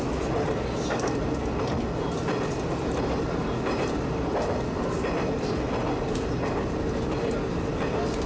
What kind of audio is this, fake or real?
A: real